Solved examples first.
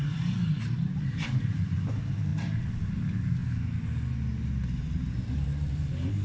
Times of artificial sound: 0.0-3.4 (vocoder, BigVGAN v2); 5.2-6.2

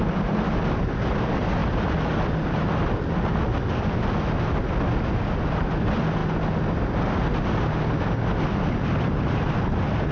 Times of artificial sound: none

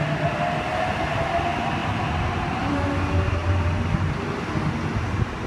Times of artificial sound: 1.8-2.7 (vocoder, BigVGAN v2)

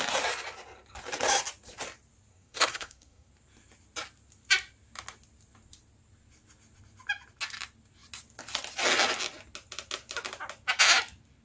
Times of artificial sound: 2.3-3.3 (codec, SNAC)